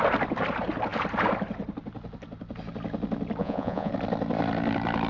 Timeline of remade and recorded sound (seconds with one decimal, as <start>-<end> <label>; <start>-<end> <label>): 0.0-3.4 recorded; 3.4-3.9 remade; 3.9-5.1 recorded